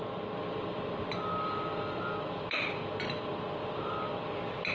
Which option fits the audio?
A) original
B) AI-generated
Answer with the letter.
A